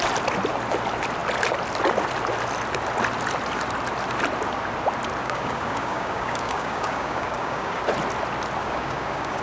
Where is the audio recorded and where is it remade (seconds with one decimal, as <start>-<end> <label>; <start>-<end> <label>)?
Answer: 0.0-5.2 recorded; 5.2-7.8 remade; 7.8-8.6 recorded; 8.6-9.4 remade